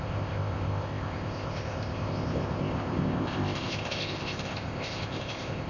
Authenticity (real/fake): fake